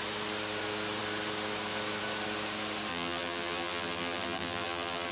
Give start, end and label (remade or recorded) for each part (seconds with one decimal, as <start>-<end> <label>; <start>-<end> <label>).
0.0-2.9 recorded; 2.9-5.1 remade